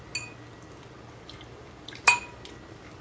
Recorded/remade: recorded